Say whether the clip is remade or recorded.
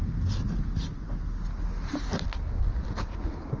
recorded